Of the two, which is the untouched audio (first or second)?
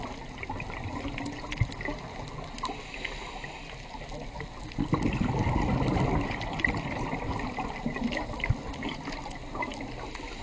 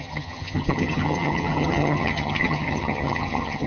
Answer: first